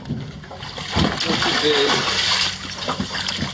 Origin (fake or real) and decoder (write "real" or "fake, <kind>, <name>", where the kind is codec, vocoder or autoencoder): real